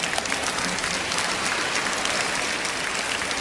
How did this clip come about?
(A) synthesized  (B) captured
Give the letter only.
B